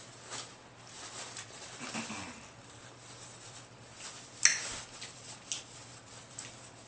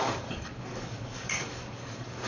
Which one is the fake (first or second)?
second